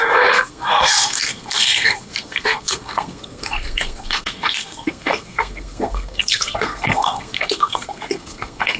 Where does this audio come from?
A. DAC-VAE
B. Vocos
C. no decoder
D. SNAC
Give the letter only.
D